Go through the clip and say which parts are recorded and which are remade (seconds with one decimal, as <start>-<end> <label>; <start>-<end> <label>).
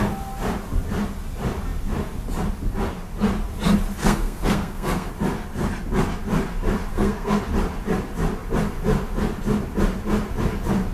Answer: 0.0-4.0 recorded; 4.0-5.1 remade; 5.1-6.9 recorded; 6.9-7.4 remade; 7.4-10.9 recorded